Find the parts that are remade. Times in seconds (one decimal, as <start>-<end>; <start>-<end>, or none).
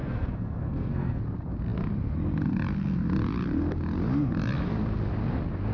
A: 0.0-1.2